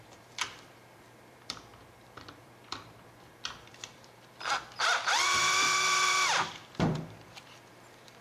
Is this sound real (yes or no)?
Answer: no